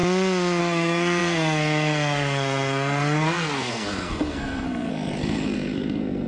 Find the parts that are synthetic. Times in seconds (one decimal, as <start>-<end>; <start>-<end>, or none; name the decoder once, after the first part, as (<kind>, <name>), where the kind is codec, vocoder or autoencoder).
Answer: 0.6-6.3 (codec, SNAC)